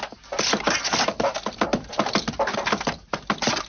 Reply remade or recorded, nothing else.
recorded